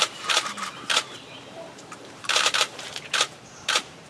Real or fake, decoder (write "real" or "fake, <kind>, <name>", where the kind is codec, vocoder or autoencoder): fake, vocoder, BigVGAN v2